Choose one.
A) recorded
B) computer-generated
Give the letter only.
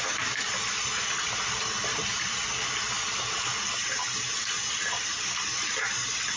A